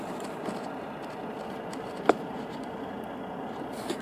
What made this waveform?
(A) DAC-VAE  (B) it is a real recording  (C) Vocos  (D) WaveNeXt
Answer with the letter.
B